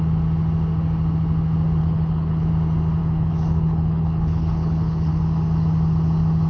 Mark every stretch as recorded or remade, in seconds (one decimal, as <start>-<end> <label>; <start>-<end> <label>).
0.0-1.8 recorded; 1.8-2.5 remade; 2.5-3.0 recorded; 3.0-5.1 remade; 5.1-6.5 recorded